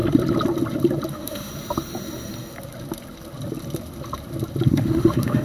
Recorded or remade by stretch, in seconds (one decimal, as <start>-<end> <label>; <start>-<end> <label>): 0.0-1.1 recorded; 1.1-1.5 remade; 1.5-4.7 recorded; 4.7-5.4 remade